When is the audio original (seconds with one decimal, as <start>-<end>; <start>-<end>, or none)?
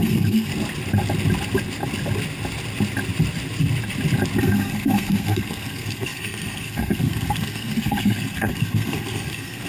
0.5-4.4